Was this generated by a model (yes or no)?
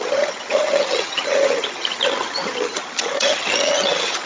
yes